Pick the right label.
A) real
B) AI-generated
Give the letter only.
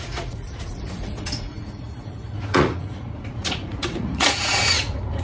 B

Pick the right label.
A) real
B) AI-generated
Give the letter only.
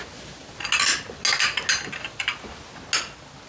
A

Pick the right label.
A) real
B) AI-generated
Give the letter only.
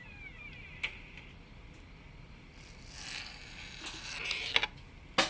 A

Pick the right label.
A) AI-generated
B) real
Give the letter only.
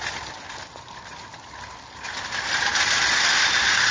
B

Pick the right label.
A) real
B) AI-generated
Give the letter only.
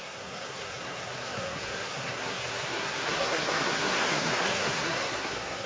B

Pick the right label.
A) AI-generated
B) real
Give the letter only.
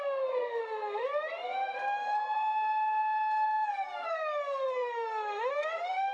A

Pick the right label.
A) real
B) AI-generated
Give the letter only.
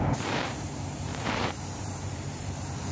B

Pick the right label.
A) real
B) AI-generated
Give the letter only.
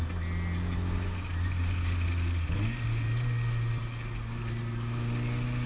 A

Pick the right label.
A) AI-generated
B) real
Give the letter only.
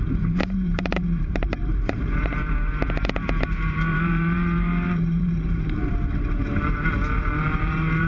A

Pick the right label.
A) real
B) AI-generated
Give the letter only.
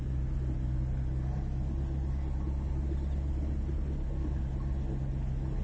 A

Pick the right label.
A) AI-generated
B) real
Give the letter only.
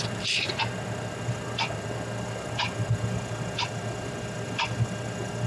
B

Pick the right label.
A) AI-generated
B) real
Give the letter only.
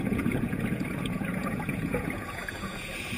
A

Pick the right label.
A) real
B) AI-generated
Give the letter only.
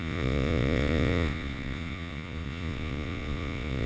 B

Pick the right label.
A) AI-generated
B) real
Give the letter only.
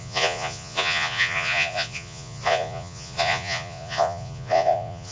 A